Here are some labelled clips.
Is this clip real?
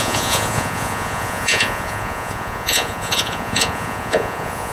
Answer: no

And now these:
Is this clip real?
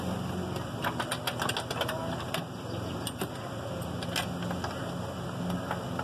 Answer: yes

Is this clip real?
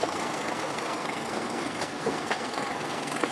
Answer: no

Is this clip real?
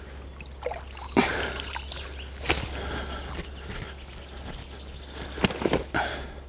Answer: yes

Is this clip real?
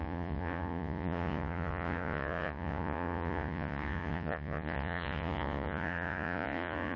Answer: no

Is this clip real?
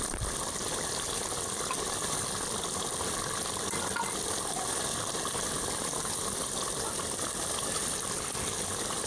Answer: yes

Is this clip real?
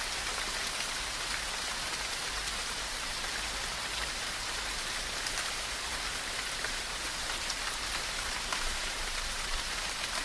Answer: no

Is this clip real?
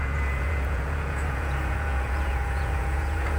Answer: no